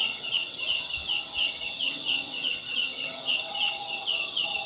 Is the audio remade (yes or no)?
yes